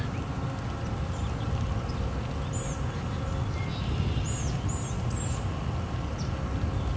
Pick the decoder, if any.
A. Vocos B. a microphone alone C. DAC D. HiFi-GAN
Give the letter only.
B